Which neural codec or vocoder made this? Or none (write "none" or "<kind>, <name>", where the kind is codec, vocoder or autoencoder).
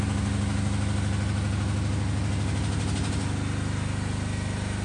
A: none